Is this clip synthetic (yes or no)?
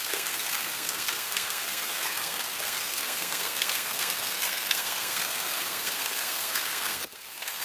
yes